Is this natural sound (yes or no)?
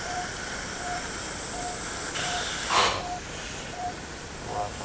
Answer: no